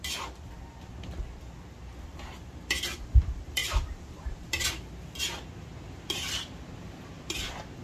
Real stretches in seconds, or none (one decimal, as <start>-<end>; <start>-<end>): 0.0-3.6; 4.7-7.8